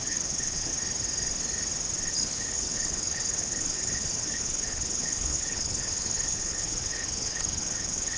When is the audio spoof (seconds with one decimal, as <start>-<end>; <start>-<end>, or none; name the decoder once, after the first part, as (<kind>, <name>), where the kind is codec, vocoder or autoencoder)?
0.0-0.7 (codec, HILCodec); 2.1-8.2